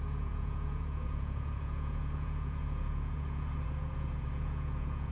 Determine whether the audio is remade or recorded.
remade